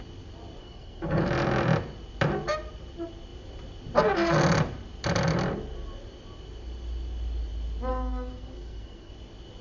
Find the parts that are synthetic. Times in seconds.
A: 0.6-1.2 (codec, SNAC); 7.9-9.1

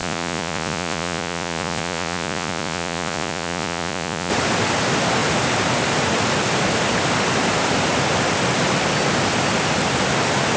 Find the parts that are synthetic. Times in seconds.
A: 0.0-4.3 (vocoder, Vocos)

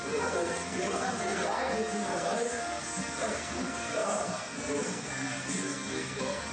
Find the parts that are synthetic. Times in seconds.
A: 0.0-6.5 (codec, SNAC)

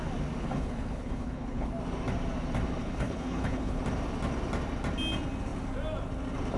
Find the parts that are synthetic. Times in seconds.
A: 0.4-1.7 (codec, HILCodec); 2.8-3.8

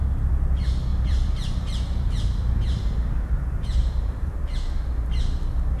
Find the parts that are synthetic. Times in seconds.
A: 0.9-4.4 (vocoder, BigVGAN v2)

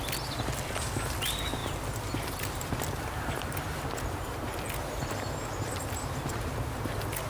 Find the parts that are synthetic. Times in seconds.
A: 1.6-5.0 (vocoder, BigVGAN v2)

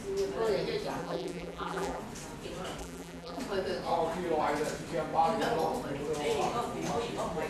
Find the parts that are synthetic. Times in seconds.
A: 1.0-2.0 (vocoder, BigVGAN v2); 2.8-3.4

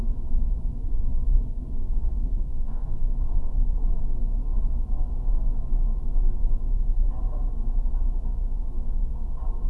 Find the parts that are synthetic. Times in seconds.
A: 0.8-3.9 (codec, SNAC)